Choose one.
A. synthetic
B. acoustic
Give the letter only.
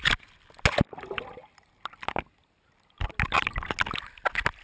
B